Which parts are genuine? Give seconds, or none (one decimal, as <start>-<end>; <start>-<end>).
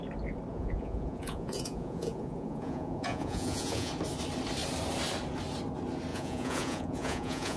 0.0-0.5; 3.9-6.1